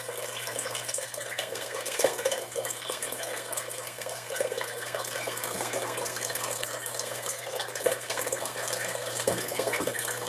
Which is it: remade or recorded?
remade